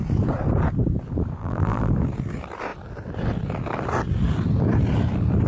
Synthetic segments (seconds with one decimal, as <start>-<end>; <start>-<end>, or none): 1.4-1.9